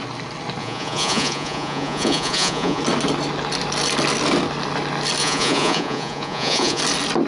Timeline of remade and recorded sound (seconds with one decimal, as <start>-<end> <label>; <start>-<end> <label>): 0.0-0.6 recorded; 0.6-2.8 remade; 2.8-5.2 recorded; 5.2-6.8 remade; 6.8-7.3 recorded